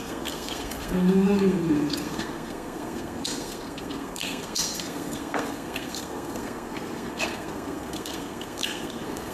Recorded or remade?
remade